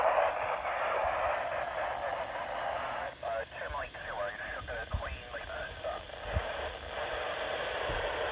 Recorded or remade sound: recorded